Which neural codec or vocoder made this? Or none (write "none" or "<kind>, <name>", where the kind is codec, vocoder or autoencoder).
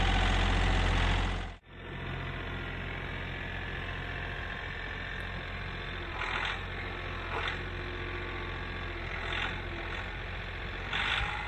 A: none